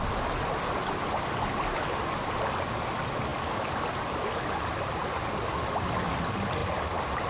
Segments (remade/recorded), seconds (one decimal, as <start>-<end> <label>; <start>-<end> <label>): 0.0-7.3 recorded